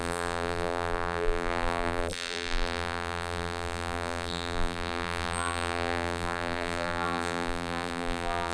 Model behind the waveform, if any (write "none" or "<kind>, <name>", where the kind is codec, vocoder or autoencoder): vocoder, BigVGAN v2